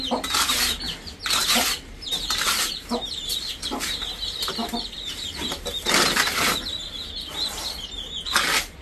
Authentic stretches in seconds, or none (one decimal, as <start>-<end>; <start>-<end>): 0.0-1.4; 4.0-8.8